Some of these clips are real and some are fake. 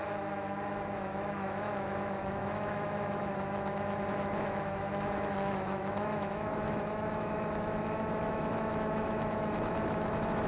fake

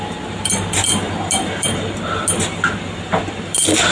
real